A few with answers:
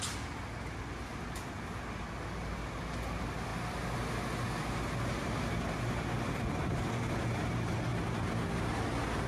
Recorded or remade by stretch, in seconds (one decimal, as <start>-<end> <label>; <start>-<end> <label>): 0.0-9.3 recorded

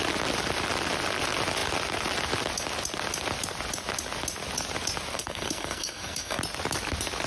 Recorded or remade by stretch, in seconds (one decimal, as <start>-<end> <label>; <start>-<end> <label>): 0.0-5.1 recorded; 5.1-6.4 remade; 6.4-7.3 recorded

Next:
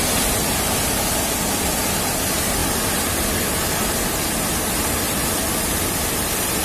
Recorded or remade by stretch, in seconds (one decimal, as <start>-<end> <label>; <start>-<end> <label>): 0.0-6.6 recorded

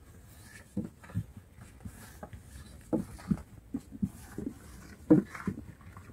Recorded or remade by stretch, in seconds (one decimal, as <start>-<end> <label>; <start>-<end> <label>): 0.0-4.4 recorded; 4.4-5.4 remade; 5.4-6.1 recorded